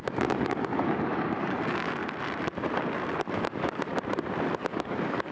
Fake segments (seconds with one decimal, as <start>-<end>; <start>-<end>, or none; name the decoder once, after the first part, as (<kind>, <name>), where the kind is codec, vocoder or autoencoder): 0.0-2.0 (codec, DAC); 3.3-3.9; 4.6-5.3